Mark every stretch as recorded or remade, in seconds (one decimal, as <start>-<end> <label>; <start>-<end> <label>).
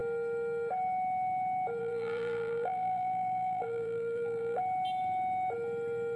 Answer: 0.0-1.8 recorded; 1.8-4.6 remade; 4.6-6.2 recorded